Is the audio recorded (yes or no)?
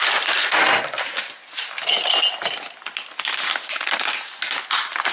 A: yes